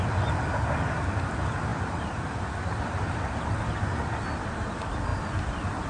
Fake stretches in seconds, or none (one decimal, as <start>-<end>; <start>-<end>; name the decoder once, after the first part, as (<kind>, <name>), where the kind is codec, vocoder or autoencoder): none